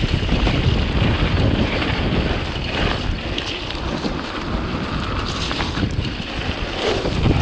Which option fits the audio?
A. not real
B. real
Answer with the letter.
A